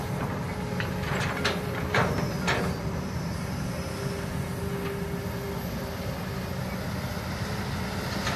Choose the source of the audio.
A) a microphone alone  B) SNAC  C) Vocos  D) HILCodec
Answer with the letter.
A